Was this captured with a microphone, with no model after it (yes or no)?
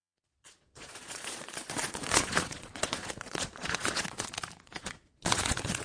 no